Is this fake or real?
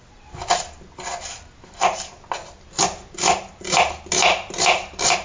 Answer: real